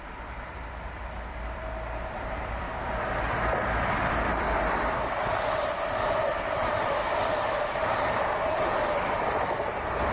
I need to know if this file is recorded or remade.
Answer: remade